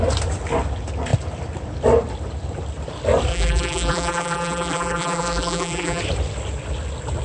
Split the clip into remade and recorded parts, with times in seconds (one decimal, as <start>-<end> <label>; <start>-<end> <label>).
0.0-3.3 recorded; 3.3-6.0 remade; 6.0-7.2 recorded